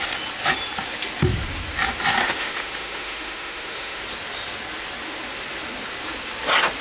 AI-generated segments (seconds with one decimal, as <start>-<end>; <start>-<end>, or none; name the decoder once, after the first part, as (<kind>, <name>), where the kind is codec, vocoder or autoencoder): 2.2-4.0 (autoencoder, DAC-VAE)